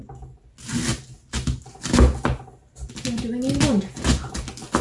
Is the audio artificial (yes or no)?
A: no